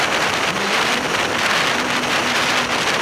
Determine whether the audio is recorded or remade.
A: recorded